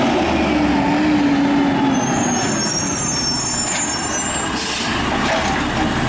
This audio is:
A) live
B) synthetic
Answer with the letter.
A